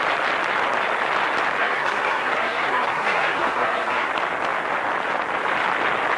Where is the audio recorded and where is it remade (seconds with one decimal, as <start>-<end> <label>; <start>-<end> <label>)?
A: 0.0-1.6 recorded; 1.6-4.1 remade; 4.1-6.2 recorded